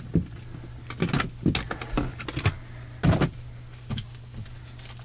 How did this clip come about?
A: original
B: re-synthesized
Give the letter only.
A